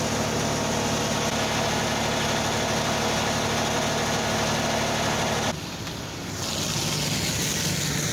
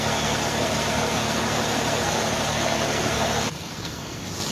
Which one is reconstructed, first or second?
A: second